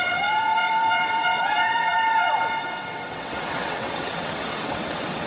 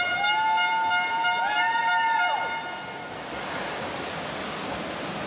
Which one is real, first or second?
second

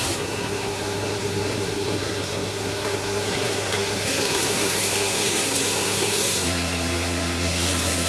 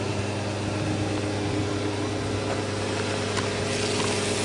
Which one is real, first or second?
second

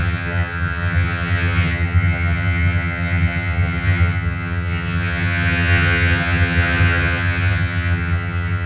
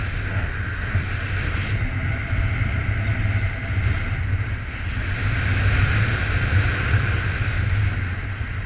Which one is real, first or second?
second